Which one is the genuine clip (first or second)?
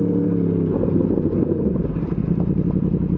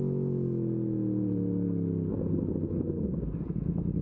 second